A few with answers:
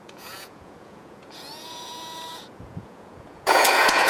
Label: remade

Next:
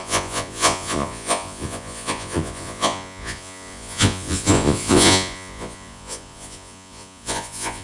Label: remade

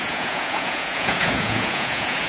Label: remade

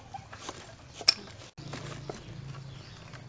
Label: recorded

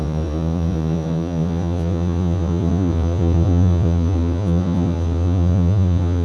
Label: remade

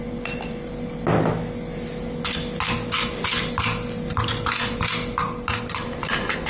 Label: recorded